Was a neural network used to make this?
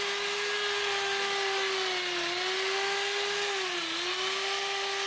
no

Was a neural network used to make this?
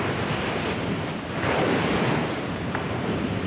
yes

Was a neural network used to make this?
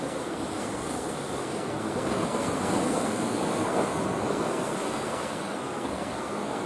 yes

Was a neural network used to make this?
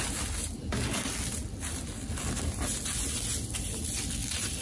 no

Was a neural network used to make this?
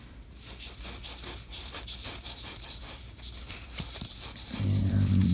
yes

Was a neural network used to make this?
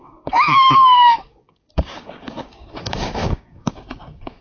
yes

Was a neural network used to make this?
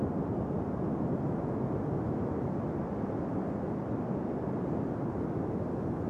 no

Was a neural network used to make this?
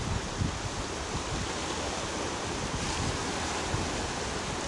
no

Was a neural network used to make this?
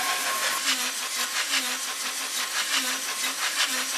no